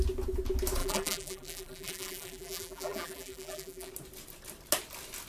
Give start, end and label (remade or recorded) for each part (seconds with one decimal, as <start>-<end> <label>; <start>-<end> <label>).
0.0-0.8 recorded; 0.8-3.9 remade; 3.9-5.3 recorded